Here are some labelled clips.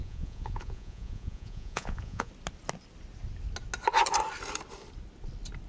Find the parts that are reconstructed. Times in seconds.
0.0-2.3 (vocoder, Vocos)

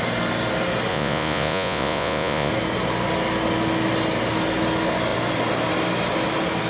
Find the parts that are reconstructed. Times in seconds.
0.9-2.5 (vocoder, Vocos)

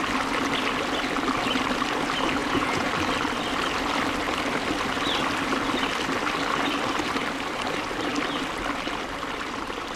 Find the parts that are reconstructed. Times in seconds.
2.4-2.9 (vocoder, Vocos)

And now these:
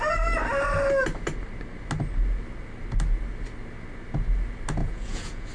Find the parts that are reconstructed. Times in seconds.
4.8-5.5 (vocoder, Vocos)

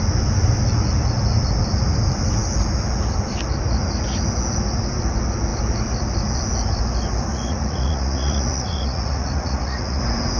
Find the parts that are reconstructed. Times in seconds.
7.3-10.0 (vocoder, Vocos)

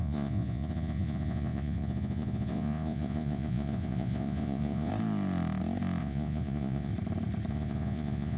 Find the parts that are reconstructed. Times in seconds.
0.0-4.9 (vocoder, Vocos); 6.0-6.9; 7.5-8.4

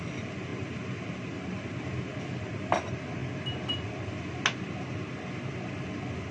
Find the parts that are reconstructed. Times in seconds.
none